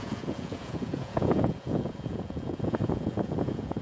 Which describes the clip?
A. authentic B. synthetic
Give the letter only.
B